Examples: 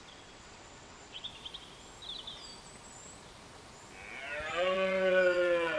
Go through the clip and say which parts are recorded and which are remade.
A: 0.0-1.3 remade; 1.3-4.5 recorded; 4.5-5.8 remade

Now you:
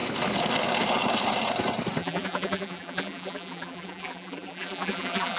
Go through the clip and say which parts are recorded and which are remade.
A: 0.0-2.0 recorded; 2.0-5.4 remade

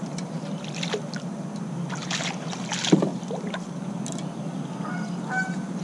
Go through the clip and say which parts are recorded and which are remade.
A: 0.0-5.8 recorded

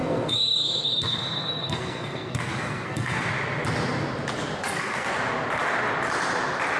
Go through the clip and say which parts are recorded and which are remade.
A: 0.0-3.3 remade; 3.3-4.6 recorded; 4.6-5.1 remade; 5.1-6.8 recorded

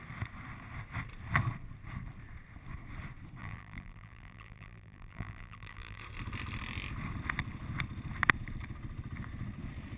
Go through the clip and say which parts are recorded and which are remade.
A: 0.0-3.4 recorded; 3.4-6.0 remade; 6.0-10.0 recorded

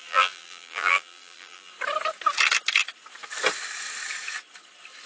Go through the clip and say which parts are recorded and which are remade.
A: 0.0-1.7 remade; 1.7-5.1 recorded